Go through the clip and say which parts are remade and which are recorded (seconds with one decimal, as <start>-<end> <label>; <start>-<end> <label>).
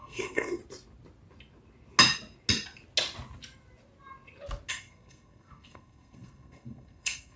0.0-0.6 remade; 0.6-4.7 recorded; 4.7-7.4 remade